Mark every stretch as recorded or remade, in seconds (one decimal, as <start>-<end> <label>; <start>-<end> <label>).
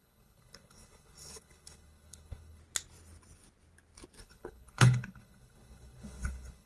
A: 0.0-2.6 remade; 2.6-4.2 recorded; 4.2-6.7 remade